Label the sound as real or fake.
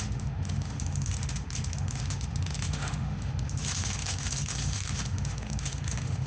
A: fake